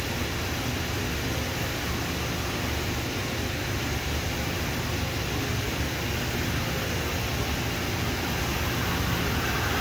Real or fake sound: real